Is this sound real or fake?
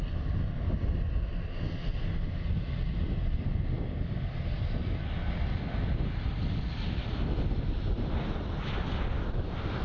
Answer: real